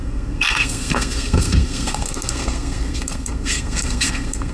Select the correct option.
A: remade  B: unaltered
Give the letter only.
A